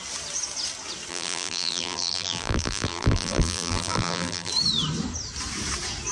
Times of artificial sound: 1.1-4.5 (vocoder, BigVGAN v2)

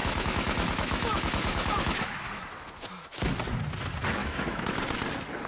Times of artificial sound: 0.0-3.3 (autoencoder, DAC-VAE); 4.2-4.7

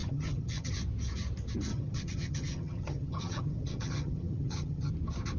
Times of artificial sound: 0.0-0.7 (vocoder, HiFi-GAN); 1.7-4.9